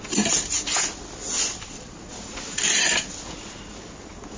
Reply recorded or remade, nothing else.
recorded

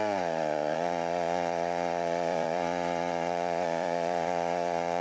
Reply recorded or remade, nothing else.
remade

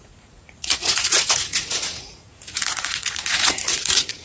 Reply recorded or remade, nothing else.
remade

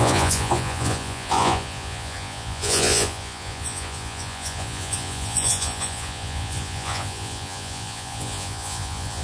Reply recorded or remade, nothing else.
remade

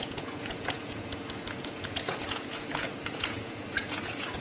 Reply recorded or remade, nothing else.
remade